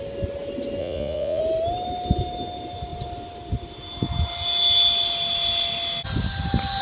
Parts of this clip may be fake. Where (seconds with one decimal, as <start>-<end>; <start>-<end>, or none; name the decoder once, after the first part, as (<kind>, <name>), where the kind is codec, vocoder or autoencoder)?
0.8-1.4 (vocoder, Vocos)